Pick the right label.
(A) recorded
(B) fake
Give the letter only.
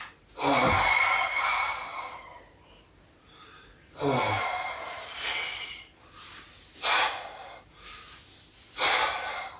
A